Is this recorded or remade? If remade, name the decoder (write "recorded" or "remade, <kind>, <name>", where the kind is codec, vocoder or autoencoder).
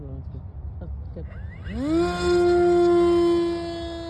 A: recorded